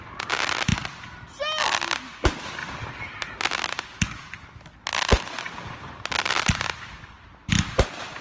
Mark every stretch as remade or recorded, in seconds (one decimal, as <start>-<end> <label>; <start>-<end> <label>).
0.0-0.7 recorded; 0.7-1.2 remade; 1.2-8.2 recorded